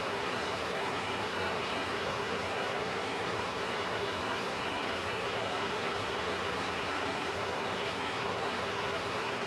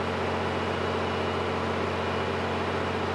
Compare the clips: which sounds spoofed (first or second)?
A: first